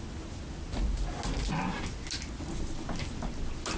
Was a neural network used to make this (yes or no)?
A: no